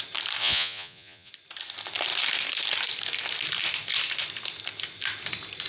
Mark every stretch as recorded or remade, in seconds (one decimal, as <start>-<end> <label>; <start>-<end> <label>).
0.0-0.4 recorded; 0.4-1.3 remade; 1.3-5.7 recorded

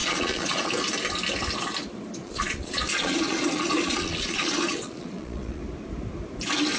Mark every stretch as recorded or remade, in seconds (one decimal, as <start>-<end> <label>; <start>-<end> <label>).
0.0-0.7 remade; 0.7-2.2 recorded; 2.2-5.6 remade; 5.6-6.8 recorded